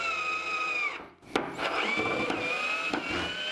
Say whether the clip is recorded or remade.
recorded